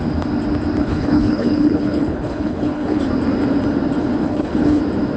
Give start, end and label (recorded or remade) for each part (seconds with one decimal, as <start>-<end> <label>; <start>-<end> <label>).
0.0-0.8 recorded; 0.8-3.0 remade; 3.0-4.2 recorded; 4.2-4.8 remade; 4.8-5.2 recorded